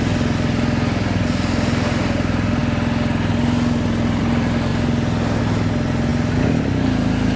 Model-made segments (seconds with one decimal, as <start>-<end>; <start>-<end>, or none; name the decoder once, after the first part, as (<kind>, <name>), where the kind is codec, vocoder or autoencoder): none